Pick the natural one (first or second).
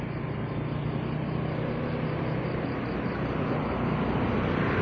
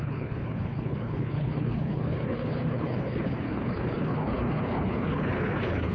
first